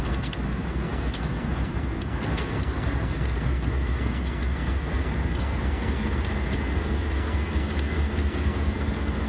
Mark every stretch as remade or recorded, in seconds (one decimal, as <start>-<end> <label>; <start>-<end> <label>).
0.0-9.3 remade